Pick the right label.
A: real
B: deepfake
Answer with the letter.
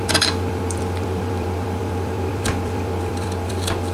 B